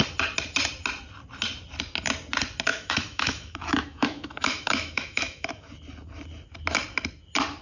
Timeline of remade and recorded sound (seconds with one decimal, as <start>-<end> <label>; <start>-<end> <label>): 0.0-2.7 recorded; 2.7-5.7 remade; 5.7-7.6 recorded